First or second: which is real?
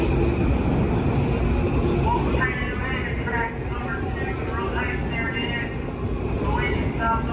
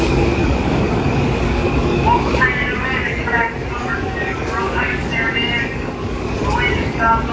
first